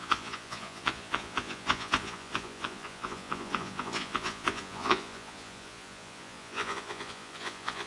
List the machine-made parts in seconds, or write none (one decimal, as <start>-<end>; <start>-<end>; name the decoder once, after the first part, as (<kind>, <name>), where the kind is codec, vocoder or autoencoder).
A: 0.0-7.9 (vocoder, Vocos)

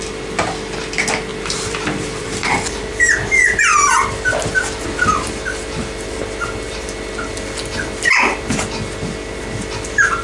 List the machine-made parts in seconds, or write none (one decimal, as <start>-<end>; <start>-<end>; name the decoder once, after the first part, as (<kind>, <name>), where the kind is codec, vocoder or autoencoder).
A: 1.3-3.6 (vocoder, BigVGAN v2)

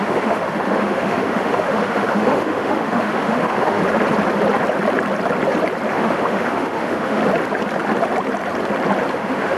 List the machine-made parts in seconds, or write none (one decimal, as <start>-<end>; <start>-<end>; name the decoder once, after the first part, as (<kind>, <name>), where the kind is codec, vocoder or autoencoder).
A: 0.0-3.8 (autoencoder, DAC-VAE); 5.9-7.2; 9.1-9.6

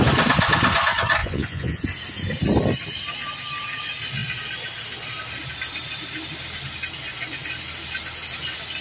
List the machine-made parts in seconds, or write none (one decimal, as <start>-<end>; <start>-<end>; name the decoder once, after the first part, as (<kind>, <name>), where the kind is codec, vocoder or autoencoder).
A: 1.2-1.8 (vocoder, Vocos)

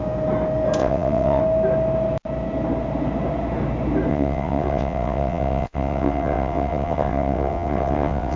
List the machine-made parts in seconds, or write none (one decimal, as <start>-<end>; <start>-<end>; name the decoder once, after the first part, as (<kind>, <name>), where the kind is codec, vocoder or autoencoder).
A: 0.8-1.4 (vocoder, WaveNeXt); 4.1-8.4